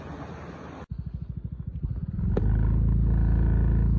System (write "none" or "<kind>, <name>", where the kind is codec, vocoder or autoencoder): none